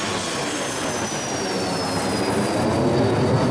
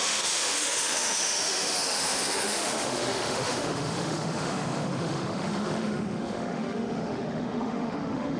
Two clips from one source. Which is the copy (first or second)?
second